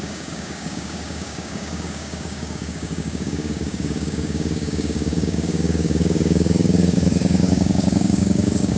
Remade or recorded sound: remade